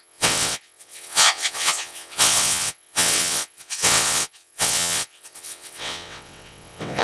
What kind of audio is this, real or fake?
fake